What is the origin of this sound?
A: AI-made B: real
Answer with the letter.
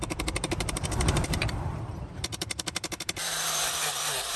A